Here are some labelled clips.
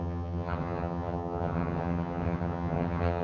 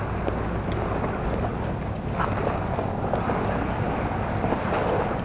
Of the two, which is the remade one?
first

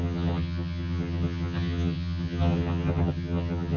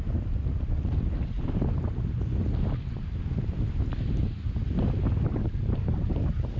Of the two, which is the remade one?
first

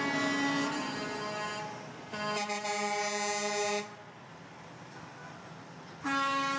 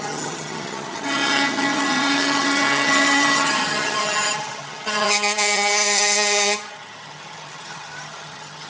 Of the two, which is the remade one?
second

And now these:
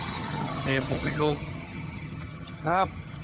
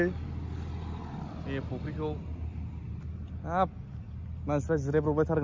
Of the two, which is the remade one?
first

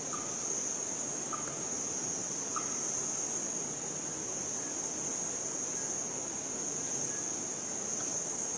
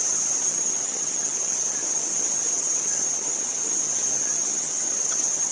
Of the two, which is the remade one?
second